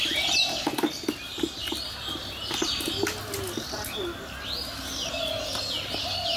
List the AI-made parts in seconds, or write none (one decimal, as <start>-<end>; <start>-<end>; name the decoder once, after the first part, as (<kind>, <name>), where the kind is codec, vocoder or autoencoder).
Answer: none